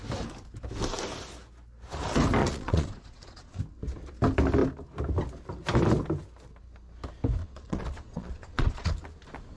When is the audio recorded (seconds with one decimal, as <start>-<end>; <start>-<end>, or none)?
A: 0.0-2.4; 3.6-7.4; 8.9-9.6